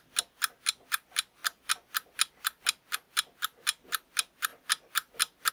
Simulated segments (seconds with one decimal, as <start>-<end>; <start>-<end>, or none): none